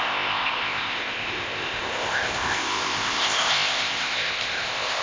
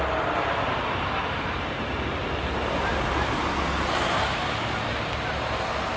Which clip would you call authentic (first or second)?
second